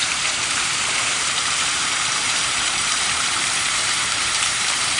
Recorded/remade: remade